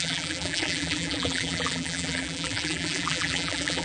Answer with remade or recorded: remade